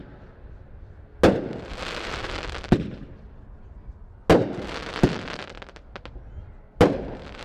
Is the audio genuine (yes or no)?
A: yes